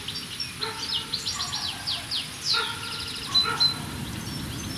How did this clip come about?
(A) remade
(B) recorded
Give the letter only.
B